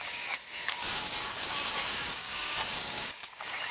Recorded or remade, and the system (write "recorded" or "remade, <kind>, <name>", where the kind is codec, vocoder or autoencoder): remade, codec, DAC